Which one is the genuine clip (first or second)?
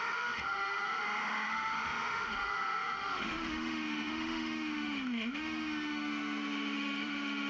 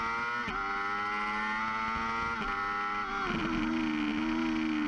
second